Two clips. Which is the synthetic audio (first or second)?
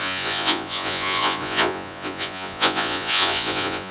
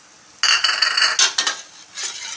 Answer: first